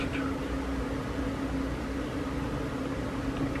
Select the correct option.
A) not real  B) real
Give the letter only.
B